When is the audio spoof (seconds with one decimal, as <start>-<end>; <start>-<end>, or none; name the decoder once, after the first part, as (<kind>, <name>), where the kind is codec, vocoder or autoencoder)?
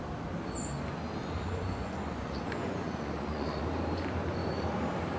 1.2-3.6 (vocoder, Vocos)